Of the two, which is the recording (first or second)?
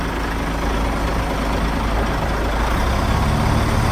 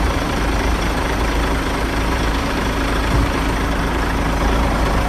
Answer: first